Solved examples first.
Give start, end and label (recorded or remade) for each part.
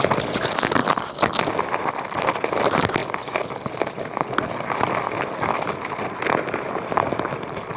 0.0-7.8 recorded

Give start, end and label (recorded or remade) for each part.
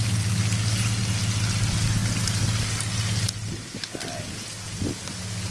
0.0-5.5 recorded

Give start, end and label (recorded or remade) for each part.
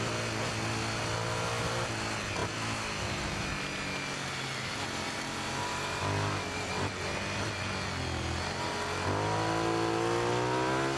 0.0-11.0 recorded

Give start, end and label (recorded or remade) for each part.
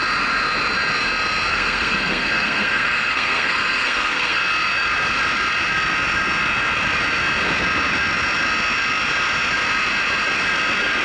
0.0-1.5 recorded; 1.5-4.4 remade; 4.4-11.0 recorded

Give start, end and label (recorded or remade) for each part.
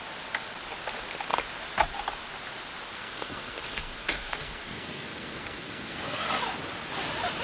0.0-2.9 recorded; 2.9-6.3 remade; 6.3-7.4 recorded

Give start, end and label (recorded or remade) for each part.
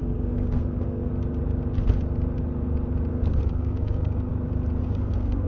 0.0-1.1 remade; 1.1-3.1 recorded; 3.1-4.3 remade; 4.3-4.8 recorded; 4.8-5.5 remade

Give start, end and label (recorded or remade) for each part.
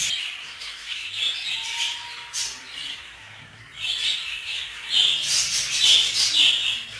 0.0-0.4 recorded; 0.4-1.1 remade; 1.1-2.9 recorded; 2.9-3.6 remade; 3.6-4.3 recorded; 4.3-4.9 remade; 4.9-7.0 recorded